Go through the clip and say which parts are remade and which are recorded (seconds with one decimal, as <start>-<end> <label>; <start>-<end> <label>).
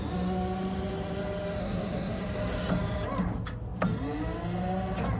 0.0-1.6 recorded; 1.6-2.2 remade; 2.2-5.2 recorded